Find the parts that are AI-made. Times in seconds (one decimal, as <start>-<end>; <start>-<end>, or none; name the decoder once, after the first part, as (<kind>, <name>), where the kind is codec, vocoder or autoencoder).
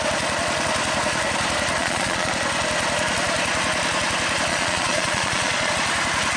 1.8-2.3 (vocoder, Vocos); 4.5-5.7